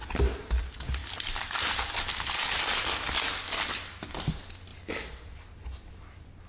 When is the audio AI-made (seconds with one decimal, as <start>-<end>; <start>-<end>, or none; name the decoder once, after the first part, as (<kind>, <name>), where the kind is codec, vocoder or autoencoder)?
none